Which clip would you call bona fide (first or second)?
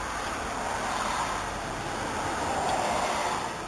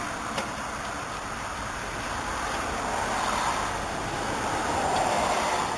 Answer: first